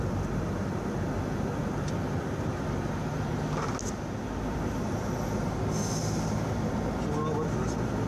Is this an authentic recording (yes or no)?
yes